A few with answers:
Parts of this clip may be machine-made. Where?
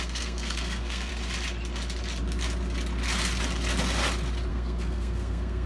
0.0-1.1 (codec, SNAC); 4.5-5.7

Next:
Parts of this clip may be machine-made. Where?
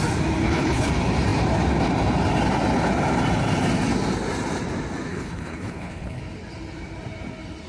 0.4-0.9 (codec, HILCodec); 5.1-6.2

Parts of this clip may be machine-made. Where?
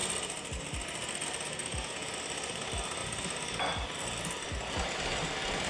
1.6-2.1 (vocoder, Vocos)